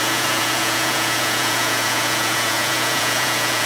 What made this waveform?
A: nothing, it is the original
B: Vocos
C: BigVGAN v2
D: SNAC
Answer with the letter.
B